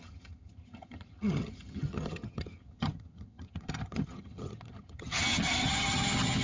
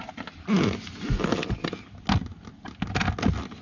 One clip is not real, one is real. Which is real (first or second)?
second